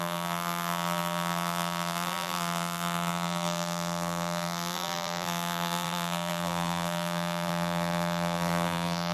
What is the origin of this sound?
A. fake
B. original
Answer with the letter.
A